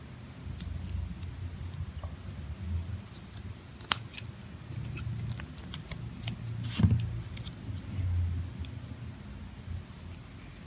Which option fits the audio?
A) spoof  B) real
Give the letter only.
B